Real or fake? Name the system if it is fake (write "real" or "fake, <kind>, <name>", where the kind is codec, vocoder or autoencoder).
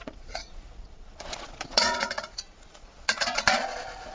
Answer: fake, vocoder, Vocos